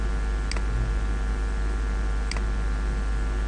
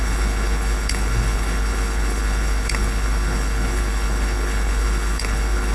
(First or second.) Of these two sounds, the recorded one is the first